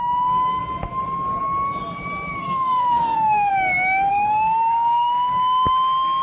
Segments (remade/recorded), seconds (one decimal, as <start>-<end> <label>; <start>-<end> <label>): 0.0-2.4 recorded; 2.4-3.5 remade; 3.5-4.1 recorded; 4.1-5.1 remade; 5.1-6.2 recorded